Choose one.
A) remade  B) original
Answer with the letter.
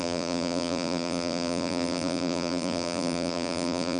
A